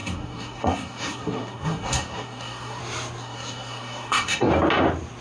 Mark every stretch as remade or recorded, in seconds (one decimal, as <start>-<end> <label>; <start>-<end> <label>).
0.0-2.8 remade; 2.8-3.2 recorded; 3.2-4.5 remade; 4.5-5.2 recorded